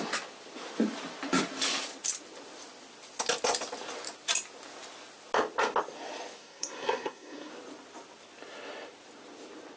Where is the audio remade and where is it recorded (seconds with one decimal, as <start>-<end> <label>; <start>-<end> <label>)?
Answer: 0.0-6.4 recorded; 6.4-7.5 remade; 7.5-9.8 recorded